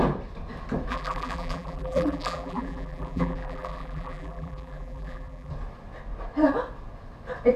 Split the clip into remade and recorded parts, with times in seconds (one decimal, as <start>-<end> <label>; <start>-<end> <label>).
0.0-0.9 recorded; 0.9-5.5 remade; 5.5-7.6 recorded